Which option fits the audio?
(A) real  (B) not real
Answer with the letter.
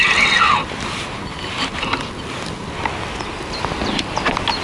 A